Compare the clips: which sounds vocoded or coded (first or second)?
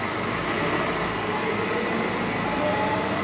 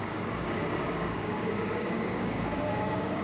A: second